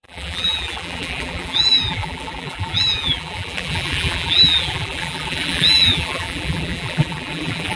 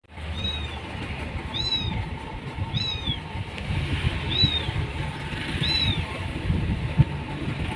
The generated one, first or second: first